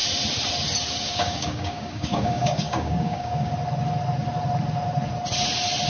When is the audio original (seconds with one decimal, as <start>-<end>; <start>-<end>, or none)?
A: 0.0-1.0; 3.5-5.9